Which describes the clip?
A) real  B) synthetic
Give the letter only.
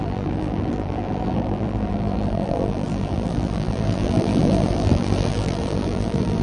B